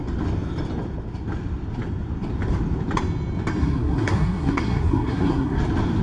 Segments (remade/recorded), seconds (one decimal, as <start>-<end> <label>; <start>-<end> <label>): 0.0-3.6 recorded; 3.6-5.6 remade; 5.6-6.0 recorded